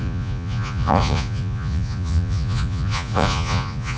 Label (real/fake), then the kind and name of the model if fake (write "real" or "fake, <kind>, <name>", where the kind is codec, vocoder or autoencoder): fake, vocoder, Vocos